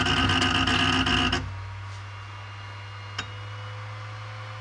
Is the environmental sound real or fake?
real